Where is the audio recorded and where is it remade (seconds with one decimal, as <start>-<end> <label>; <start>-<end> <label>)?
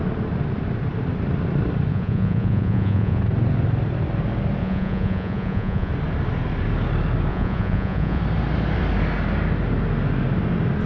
0.0-1.9 recorded; 1.9-3.2 remade; 3.2-4.6 recorded; 4.6-5.9 remade; 5.9-7.3 recorded; 7.3-8.2 remade; 8.2-10.9 recorded